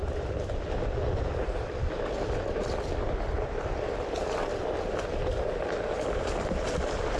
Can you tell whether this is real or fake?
fake